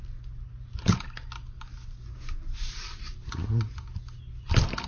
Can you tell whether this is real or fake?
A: real